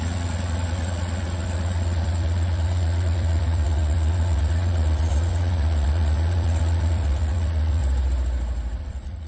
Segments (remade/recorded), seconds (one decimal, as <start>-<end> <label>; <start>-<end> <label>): 0.0-7.8 remade; 7.8-8.8 recorded; 8.8-9.3 remade